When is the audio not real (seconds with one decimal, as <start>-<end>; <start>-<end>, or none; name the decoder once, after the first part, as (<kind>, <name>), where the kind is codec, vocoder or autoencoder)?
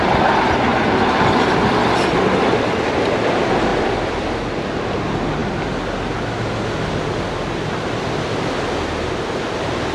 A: 3.7-4.4 (vocoder, BigVGAN v2)